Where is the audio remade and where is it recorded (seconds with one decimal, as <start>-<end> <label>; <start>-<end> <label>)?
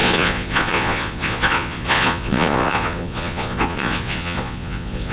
0.0-5.1 remade